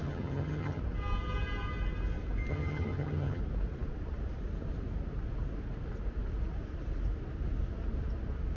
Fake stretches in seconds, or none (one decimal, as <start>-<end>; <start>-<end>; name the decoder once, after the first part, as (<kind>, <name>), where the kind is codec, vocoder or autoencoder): 0.0-0.8 (vocoder, HiFi-GAN); 2.5-3.4